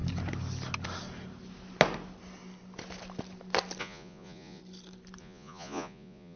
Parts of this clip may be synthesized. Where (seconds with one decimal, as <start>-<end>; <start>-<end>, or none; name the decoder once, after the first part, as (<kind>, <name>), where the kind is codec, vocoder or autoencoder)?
3.8-4.6 (vocoder, Vocos); 5.2-6.4